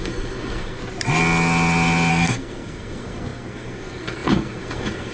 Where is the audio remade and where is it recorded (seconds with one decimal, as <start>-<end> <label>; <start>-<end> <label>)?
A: 0.0-0.8 remade; 0.8-2.1 recorded; 2.1-5.1 remade